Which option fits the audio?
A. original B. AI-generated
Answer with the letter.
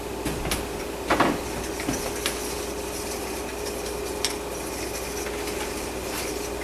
A